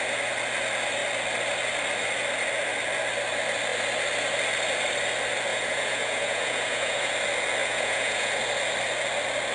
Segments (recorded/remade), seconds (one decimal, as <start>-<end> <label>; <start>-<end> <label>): 0.0-5.5 recorded; 5.5-7.1 remade; 7.1-7.6 recorded; 7.6-8.3 remade; 8.3-9.5 recorded